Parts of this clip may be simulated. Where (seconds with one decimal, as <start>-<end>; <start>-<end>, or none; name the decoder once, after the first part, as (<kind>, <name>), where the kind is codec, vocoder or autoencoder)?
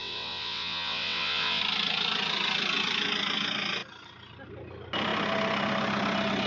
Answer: 0.0-1.6 (vocoder, WaveNeXt)